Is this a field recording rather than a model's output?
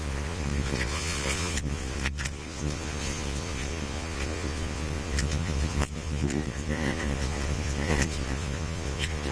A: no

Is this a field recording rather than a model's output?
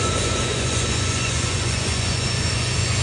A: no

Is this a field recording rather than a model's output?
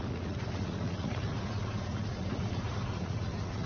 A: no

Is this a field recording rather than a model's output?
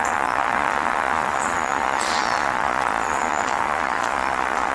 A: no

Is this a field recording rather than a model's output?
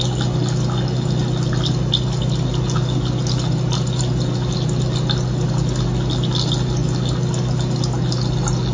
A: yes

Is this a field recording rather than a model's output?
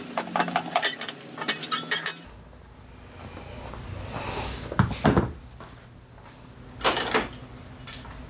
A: yes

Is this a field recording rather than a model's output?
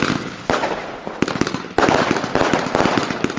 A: yes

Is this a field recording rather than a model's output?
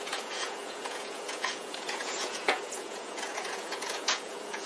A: no